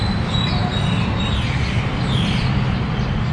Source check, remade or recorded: recorded